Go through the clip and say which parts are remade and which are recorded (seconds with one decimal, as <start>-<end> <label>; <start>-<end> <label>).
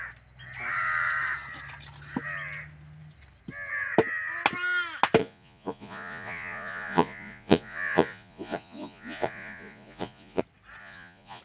0.0-5.2 recorded; 5.2-10.4 remade; 10.4-10.8 recorded; 10.8-11.4 remade